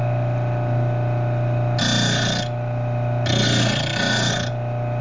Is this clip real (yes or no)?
yes